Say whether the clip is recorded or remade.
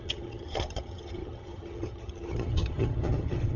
remade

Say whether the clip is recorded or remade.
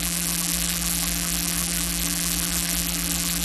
remade